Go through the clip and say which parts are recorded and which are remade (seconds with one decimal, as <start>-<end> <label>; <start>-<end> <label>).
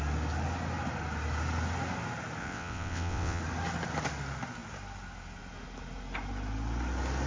0.0-2.4 recorded; 2.4-3.4 remade; 3.4-7.3 recorded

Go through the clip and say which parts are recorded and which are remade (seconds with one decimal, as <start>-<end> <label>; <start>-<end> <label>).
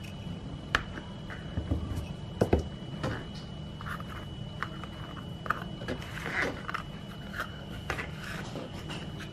0.0-7.3 recorded; 7.3-8.8 remade; 8.8-9.3 recorded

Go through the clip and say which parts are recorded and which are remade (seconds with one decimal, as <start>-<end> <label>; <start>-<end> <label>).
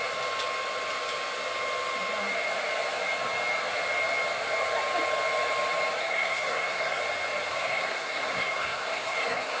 0.0-6.0 recorded; 6.0-7.0 remade; 7.0-7.5 recorded; 7.5-9.6 remade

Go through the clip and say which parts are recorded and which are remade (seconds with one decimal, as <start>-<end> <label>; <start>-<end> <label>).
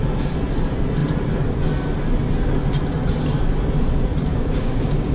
0.0-4.3 recorded; 4.3-5.1 remade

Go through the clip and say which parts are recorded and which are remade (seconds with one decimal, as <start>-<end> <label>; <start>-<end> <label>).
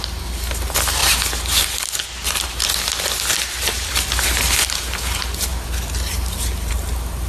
0.0-7.3 recorded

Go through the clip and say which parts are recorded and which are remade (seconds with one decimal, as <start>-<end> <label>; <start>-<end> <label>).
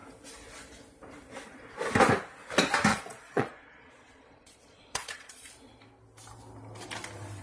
0.0-2.9 recorded; 2.9-5.5 remade; 5.5-7.4 recorded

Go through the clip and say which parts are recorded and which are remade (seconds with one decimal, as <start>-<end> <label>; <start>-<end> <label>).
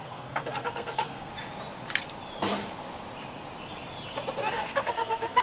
0.0-1.3 remade; 1.3-4.5 recorded; 4.5-5.4 remade